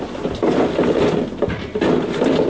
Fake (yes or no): no